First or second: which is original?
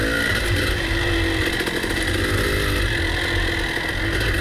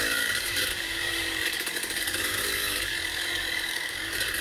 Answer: first